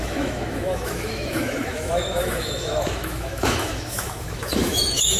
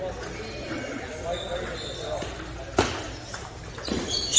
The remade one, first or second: first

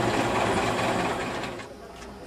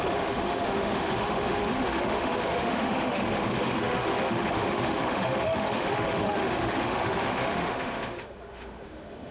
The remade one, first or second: second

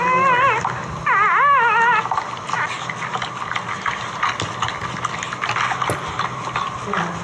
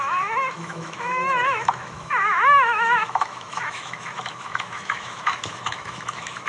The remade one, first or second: second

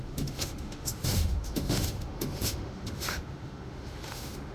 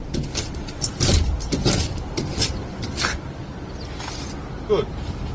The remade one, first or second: first